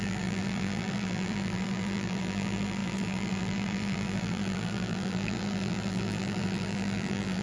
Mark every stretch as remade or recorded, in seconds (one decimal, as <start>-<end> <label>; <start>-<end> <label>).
0.0-7.4 remade